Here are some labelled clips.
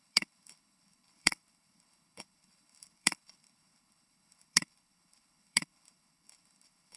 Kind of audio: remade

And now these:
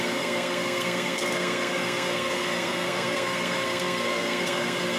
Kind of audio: remade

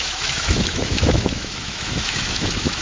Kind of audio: remade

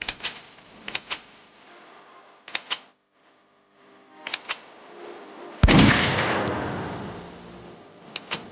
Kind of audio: recorded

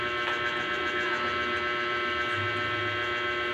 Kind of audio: recorded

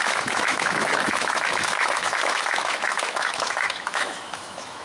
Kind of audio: remade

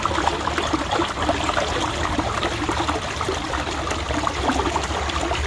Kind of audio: recorded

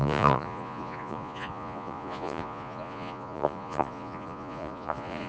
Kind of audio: remade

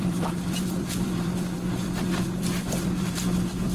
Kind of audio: remade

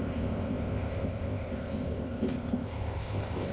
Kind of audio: remade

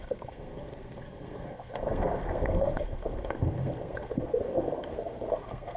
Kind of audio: remade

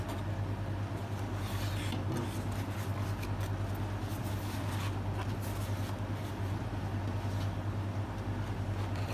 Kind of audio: recorded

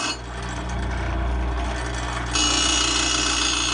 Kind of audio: recorded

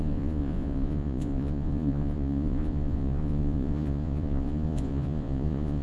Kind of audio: remade